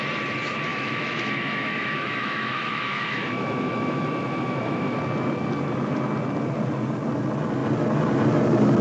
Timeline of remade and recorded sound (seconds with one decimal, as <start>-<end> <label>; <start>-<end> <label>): 0.0-0.7 recorded; 0.7-5.0 remade; 5.0-8.8 recorded